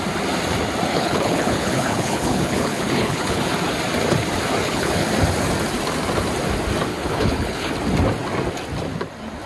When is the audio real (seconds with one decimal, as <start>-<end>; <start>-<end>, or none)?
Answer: 0.0-0.9; 3.4-4.6; 5.1-6.9; 7.7-9.5